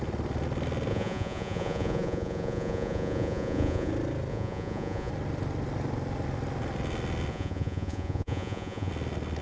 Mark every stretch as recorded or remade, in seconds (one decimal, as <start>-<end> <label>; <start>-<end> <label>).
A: 0.0-0.9 recorded; 0.9-3.9 remade; 3.9-4.3 recorded; 4.3-5.1 remade; 5.1-7.3 recorded; 7.3-8.9 remade; 8.9-9.4 recorded